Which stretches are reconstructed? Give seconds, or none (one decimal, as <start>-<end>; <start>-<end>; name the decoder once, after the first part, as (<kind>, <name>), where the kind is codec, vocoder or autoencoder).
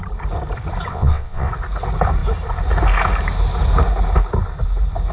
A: 0.9-1.5 (vocoder, WaveNeXt)